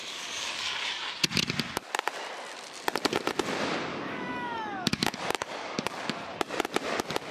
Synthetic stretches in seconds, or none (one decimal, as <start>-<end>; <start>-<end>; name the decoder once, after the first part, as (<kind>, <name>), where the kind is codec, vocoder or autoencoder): 0.0-1.1 (codec, DAC); 3.9-5.9